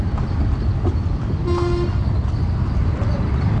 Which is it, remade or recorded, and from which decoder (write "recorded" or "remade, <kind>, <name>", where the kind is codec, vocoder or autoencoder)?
recorded